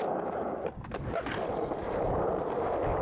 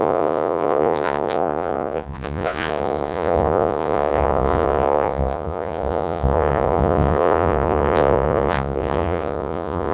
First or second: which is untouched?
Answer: first